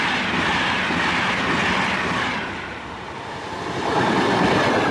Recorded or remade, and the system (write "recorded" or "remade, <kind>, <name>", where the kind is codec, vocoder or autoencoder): recorded